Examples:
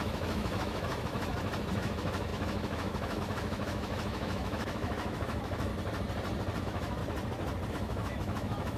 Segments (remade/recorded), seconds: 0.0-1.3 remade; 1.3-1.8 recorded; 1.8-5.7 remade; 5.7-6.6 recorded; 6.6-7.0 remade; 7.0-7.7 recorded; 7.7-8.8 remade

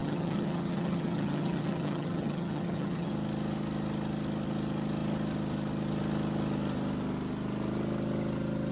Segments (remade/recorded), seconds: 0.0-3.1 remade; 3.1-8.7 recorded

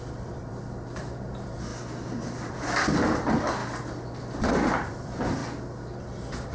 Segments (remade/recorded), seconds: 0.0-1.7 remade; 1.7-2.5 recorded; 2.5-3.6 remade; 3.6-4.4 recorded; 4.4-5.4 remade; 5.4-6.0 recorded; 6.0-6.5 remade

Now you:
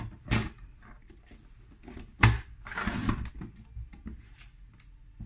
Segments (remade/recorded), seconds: 0.0-5.3 recorded

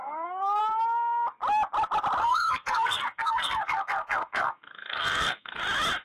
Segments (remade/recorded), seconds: 0.0-0.6 remade; 0.6-2.2 recorded; 2.2-5.6 remade; 5.6-6.0 recorded

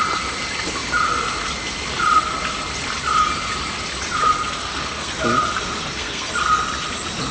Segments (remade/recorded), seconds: 0.0-4.6 recorded; 4.6-5.1 remade; 5.1-5.8 recorded; 5.8-6.3 remade; 6.3-7.3 recorded

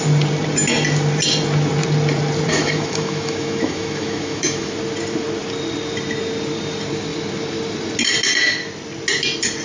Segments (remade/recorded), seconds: 0.0-2.5 recorded; 2.5-4.7 remade; 4.7-9.6 recorded